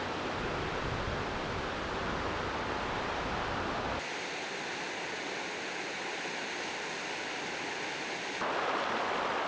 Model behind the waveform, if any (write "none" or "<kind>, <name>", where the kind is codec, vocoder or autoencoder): none